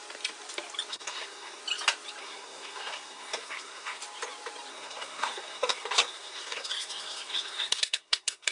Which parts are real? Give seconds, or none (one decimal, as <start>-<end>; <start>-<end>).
0.0-0.9; 1.6-2.2; 4.0-4.7

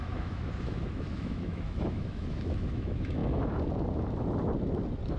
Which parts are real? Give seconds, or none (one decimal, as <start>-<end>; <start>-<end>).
3.2-5.2

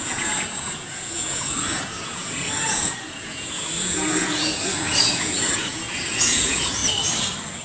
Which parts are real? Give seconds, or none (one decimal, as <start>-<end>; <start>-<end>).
6.8-7.6

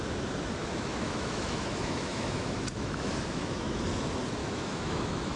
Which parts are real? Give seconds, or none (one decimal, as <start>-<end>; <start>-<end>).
0.0-0.6; 3.8-4.4